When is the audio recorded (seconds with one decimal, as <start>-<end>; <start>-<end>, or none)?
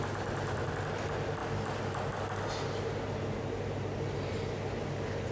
0.0-5.3